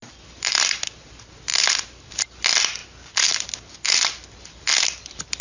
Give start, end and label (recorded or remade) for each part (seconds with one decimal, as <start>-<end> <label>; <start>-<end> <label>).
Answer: 0.0-5.4 recorded